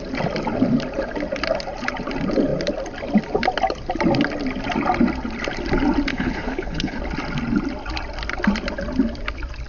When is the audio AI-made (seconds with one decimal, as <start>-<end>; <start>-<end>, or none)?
6.1-7.0